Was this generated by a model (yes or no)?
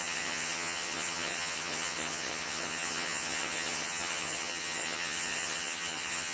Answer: yes